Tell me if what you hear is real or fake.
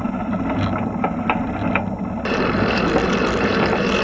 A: real